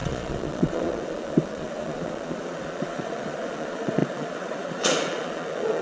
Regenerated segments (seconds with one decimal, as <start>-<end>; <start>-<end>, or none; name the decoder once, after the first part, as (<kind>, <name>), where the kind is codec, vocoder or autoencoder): 0.0-5.8 (vocoder, Vocos)